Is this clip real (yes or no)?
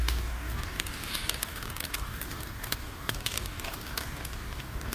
no